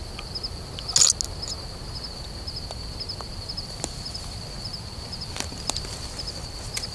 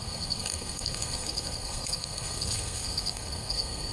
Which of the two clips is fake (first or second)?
second